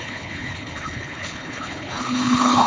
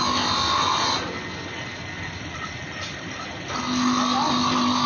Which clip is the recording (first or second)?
second